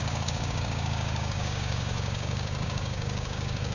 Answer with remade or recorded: remade